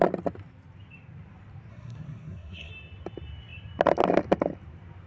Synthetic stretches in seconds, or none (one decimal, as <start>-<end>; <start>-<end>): 1.7-2.7